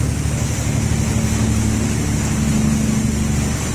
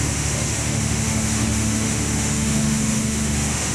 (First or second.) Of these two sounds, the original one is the first